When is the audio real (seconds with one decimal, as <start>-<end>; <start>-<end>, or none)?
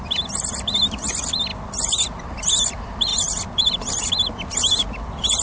0.0-5.4